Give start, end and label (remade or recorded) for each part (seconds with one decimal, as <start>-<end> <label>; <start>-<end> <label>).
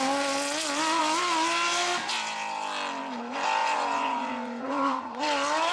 0.0-3.6 recorded; 3.6-5.2 remade; 5.2-5.7 recorded